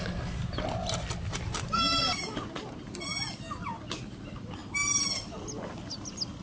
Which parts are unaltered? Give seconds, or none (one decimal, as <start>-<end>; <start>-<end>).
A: 0.0-6.4

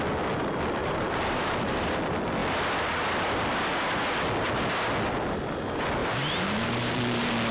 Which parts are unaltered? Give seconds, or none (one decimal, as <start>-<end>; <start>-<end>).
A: 0.0-0.8; 2.0-6.0; 7.0-7.5

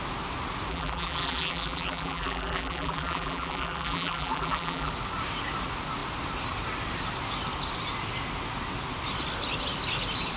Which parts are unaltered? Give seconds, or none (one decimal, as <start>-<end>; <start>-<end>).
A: 0.0-0.7; 4.9-10.4

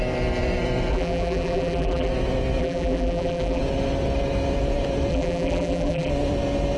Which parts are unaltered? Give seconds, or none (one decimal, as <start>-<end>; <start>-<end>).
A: 0.0-0.9; 2.1-2.6; 3.6-5.1; 6.1-6.8

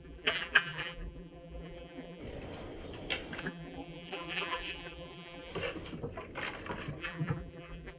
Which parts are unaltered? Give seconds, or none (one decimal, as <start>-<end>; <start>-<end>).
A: 2.2-3.4; 5.5-7.0

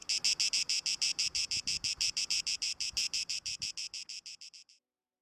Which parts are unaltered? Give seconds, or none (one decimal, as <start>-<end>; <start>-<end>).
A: 0.0-0.5

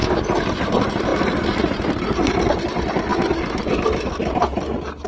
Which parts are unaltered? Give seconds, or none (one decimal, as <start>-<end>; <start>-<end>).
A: 3.1-3.7; 4.5-5.1

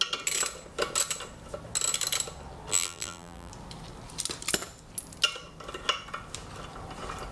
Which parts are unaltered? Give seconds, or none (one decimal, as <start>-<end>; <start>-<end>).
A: 0.0-2.7; 3.5-7.3